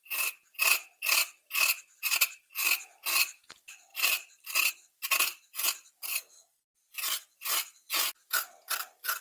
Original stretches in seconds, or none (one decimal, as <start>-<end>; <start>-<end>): 0.0-6.1; 6.7-9.2